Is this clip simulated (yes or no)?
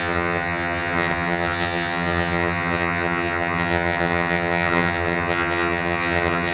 yes